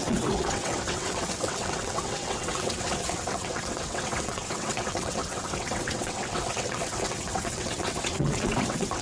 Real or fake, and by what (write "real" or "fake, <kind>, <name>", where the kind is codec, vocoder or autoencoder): fake, vocoder, WaveNeXt